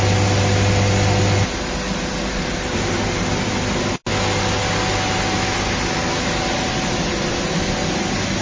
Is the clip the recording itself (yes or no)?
yes